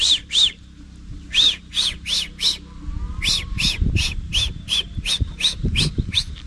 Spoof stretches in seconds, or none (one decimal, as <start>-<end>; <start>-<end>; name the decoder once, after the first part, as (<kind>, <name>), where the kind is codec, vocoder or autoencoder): 0.0-1.7 (vocoder, BigVGAN v2); 3.4-6.5